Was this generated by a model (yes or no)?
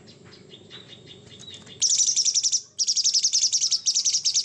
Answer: no